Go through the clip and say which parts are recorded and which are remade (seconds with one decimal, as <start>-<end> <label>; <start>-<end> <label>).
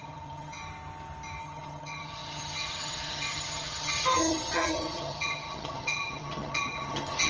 0.0-0.6 remade; 0.6-1.4 recorded; 1.4-7.3 remade